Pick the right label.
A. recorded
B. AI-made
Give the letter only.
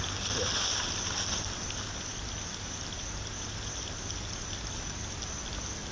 A